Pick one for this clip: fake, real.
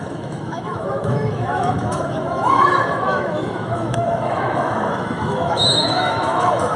fake